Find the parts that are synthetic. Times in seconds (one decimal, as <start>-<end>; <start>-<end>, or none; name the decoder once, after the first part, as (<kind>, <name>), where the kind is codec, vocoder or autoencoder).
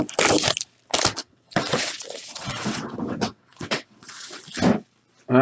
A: 1.2-4.4 (vocoder, WaveNeXt)